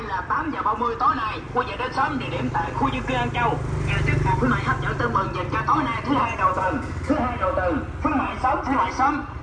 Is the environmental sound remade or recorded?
recorded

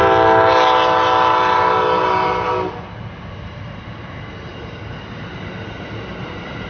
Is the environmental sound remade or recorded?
recorded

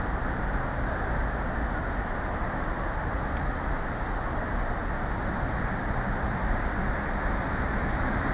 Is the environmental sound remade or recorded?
recorded